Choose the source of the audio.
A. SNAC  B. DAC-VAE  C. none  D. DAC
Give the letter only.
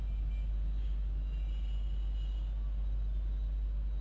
C